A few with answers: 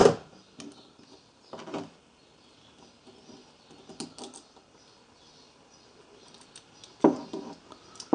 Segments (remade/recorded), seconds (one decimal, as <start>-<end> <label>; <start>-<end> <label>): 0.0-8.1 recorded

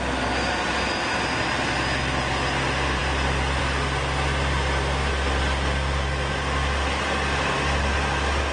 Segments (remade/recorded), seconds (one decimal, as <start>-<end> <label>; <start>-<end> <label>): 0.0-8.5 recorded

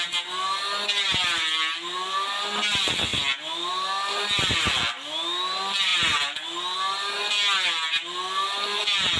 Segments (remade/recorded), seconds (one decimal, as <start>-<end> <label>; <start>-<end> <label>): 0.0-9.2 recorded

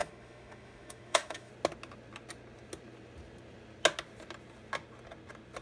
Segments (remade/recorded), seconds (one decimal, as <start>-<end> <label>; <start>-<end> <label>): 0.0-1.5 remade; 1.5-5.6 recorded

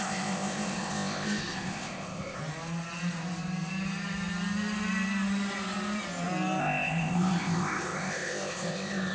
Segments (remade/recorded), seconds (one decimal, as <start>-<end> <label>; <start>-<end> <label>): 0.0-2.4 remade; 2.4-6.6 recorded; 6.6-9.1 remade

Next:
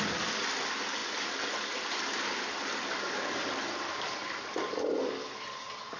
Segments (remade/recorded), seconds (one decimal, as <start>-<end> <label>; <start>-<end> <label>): 0.0-6.0 recorded